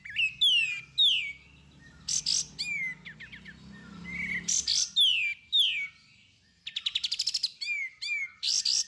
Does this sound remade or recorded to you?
recorded